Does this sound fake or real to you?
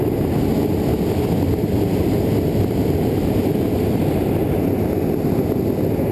real